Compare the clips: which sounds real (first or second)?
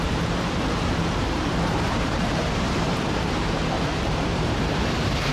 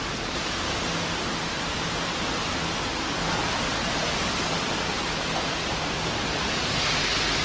second